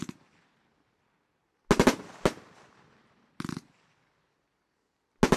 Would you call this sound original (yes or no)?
yes